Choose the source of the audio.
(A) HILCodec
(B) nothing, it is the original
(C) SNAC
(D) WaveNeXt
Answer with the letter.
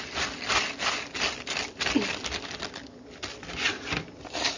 B